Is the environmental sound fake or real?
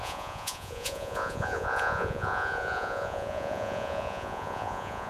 fake